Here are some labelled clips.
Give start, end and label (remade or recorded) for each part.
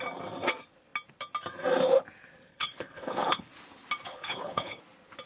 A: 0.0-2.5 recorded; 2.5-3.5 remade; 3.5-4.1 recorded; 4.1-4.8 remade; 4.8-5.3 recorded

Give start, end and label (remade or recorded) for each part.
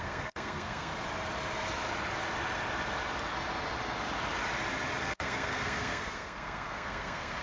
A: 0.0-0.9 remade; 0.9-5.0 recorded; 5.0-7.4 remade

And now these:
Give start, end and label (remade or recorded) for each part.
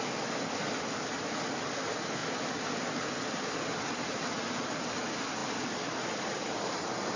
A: 0.0-7.2 recorded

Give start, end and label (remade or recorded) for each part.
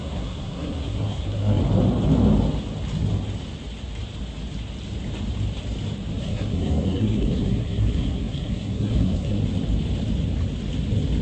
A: 0.0-1.6 remade; 1.6-6.2 recorded; 6.2-9.4 remade; 9.4-11.2 recorded